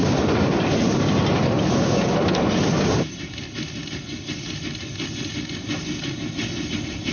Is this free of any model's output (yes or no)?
yes